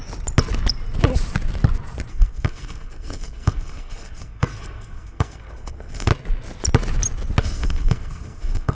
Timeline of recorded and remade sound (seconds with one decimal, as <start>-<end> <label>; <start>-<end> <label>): 0.0-2.1 recorded; 2.1-6.1 remade; 6.1-7.4 recorded; 7.4-8.7 remade